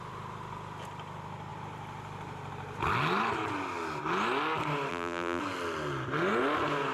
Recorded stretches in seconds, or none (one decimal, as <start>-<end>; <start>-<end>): 0.0-4.9; 5.4-6.9